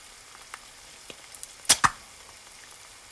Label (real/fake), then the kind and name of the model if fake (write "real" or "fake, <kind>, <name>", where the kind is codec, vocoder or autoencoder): real